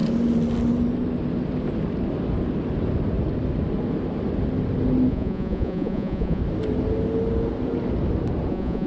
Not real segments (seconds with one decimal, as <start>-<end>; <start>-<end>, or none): 5.1-6.4; 8.5-8.9